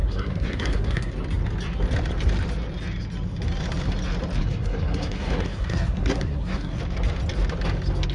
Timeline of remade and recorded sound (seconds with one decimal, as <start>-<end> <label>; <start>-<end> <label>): 0.0-1.1 remade; 1.1-4.4 recorded; 4.4-6.8 remade; 6.8-8.1 recorded